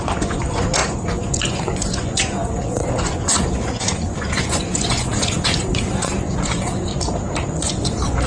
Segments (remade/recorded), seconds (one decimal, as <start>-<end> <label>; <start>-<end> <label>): 0.0-6.9 remade; 6.9-7.5 recorded; 7.5-8.3 remade